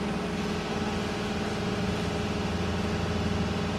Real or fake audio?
real